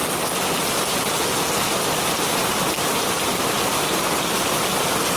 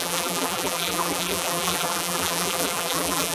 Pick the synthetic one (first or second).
second